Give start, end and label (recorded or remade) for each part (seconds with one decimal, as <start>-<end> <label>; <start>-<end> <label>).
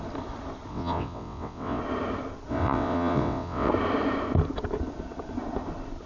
0.0-0.7 recorded; 0.7-1.8 remade; 1.8-2.5 recorded; 2.5-3.7 remade; 3.7-6.1 recorded